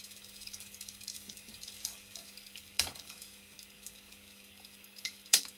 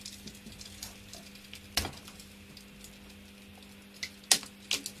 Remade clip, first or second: first